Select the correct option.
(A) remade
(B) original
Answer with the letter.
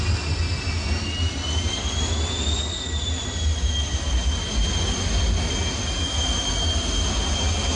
B